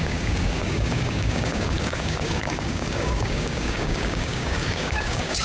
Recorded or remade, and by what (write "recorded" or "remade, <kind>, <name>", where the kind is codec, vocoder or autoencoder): remade, codec, DAC